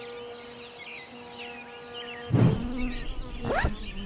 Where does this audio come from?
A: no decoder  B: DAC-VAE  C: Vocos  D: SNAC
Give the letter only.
A